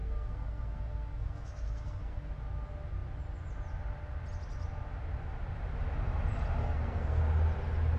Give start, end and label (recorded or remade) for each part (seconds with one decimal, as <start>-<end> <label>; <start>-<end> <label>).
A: 0.0-2.3 remade; 2.3-6.6 recorded; 6.6-7.2 remade; 7.2-8.0 recorded